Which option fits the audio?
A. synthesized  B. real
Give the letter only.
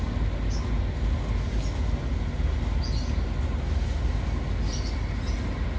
B